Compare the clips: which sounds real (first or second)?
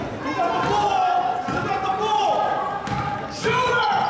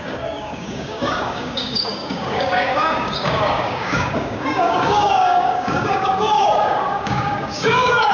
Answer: first